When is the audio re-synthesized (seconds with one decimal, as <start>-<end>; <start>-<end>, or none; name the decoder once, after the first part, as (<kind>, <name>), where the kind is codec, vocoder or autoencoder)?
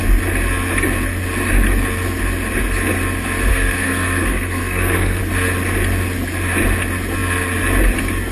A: 3.5-5.2 (codec, SNAC)